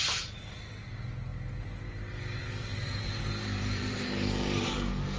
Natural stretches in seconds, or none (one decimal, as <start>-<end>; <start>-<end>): 0.0-2.4